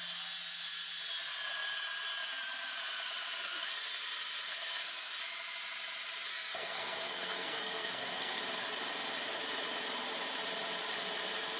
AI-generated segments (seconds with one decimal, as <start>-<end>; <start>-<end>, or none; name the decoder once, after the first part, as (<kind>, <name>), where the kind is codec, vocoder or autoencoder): 4.5-5.1 (codec, SNAC); 6.3-8.4